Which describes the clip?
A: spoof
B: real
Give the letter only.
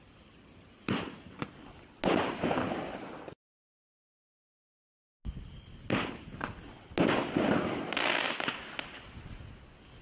B